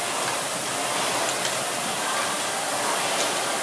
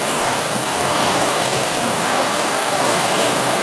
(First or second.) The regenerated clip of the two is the second